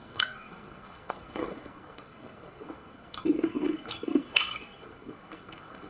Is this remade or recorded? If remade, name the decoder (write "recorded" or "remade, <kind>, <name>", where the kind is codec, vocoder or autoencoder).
remade, codec, SNAC